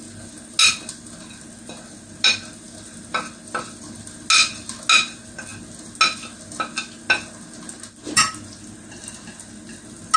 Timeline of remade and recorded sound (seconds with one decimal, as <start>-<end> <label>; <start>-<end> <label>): 0.0-10.2 recorded